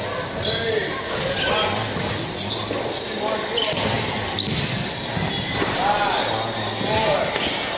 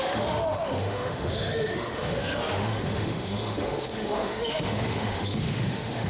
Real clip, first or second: first